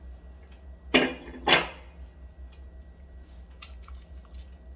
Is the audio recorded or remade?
recorded